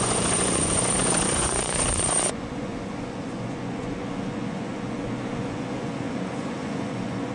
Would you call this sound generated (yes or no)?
yes